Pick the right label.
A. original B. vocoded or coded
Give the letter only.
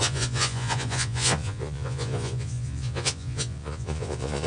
B